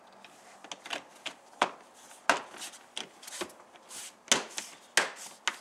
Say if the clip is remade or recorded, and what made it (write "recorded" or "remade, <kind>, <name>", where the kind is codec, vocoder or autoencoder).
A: recorded